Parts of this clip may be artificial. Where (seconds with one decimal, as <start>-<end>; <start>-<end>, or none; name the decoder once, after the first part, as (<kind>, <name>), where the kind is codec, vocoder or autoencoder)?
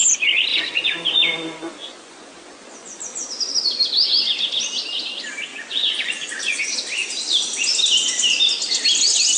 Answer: 0.5-3.5 (vocoder, Vocos); 5.5-6.6